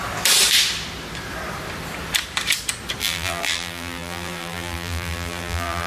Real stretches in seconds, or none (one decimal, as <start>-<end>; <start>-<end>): 0.0-3.0